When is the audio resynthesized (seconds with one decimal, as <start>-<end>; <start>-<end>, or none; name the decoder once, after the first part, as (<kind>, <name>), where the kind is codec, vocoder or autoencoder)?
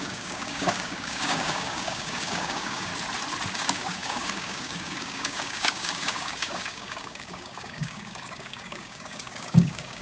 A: 0.0-2.9 (codec, DAC); 3.5-10.0